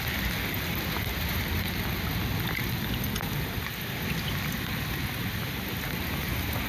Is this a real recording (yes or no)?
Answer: yes